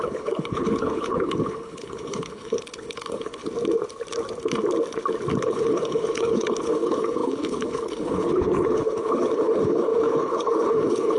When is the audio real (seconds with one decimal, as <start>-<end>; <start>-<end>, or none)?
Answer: 3.4-5.4

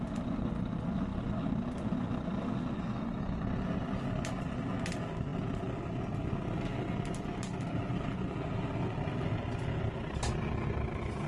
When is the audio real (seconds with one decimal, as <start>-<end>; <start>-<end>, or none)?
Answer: 0.0-11.3

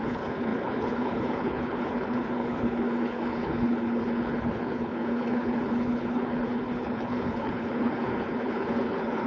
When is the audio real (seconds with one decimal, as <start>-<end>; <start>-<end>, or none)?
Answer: none